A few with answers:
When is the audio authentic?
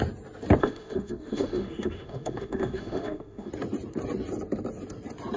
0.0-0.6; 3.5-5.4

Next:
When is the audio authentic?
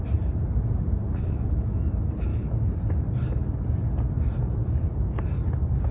0.0-1.0; 1.8-5.9